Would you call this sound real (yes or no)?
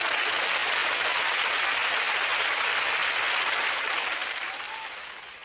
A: yes